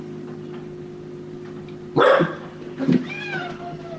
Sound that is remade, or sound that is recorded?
recorded